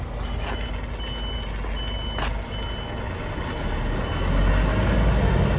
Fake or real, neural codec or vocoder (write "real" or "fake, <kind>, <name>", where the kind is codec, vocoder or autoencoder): real